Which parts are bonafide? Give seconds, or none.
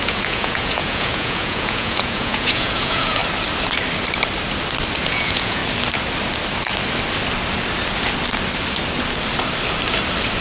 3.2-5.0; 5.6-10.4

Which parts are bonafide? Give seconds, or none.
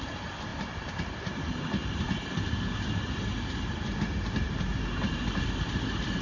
0.0-6.2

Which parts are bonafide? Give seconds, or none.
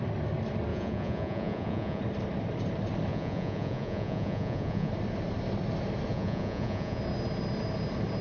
0.0-0.7; 2.0-3.1; 4.9-6.1; 7.0-8.2